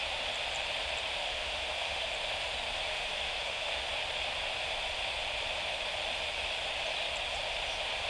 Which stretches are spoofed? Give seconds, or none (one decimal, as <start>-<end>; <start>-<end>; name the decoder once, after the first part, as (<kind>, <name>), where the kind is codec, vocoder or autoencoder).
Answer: 1.2-2.1 (autoencoder, DAC-VAE); 2.9-3.8